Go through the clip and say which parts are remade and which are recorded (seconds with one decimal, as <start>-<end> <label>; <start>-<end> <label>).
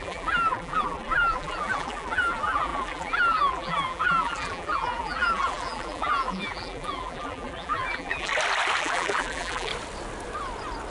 0.0-8.3 remade; 8.3-8.8 recorded; 8.8-9.7 remade; 9.7-10.9 recorded